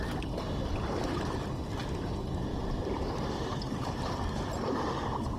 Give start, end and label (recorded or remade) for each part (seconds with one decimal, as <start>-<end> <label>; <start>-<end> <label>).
0.0-2.5 recorded; 2.5-5.0 remade; 5.0-5.4 recorded